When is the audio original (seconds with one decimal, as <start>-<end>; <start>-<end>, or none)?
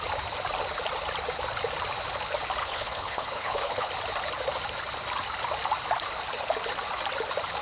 0.0-2.6; 3.9-7.6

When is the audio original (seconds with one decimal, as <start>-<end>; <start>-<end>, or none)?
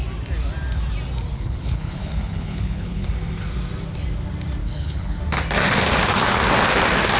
0.0-1.3; 3.1-4.6; 5.2-7.2